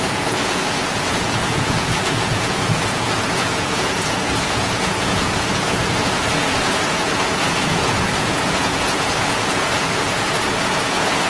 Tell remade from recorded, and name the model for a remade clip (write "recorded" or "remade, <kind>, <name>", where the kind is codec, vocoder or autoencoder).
remade, vocoder, Vocos